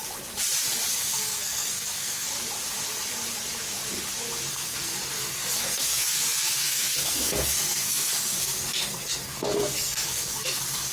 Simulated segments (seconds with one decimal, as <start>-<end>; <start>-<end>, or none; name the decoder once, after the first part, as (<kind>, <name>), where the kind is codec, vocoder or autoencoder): 0.9-2.3 (codec, SNAC); 4.5-10.9